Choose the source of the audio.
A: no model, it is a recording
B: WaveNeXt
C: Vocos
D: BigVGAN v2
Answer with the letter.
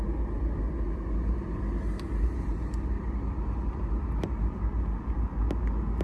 A